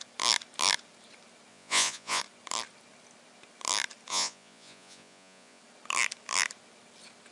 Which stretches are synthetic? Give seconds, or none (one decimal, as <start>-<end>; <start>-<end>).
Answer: 1.5-2.2; 4.1-5.6